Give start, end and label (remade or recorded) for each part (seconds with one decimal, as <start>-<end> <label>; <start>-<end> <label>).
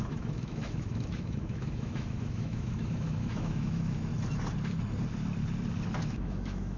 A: 0.0-4.1 remade; 4.1-6.0 recorded; 6.0-6.8 remade